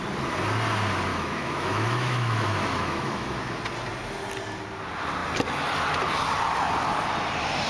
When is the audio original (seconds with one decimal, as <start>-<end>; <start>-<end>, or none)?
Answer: 0.0-1.1; 3.6-7.7